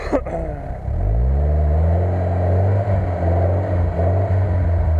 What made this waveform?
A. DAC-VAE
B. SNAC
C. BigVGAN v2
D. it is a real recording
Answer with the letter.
D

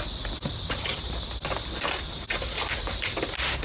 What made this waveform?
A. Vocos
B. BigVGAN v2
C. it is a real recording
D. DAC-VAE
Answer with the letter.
C